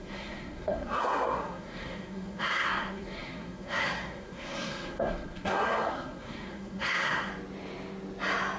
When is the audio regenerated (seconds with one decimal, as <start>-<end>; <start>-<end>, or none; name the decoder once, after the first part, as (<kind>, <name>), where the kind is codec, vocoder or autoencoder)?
0.0-7.3 (codec, SNAC)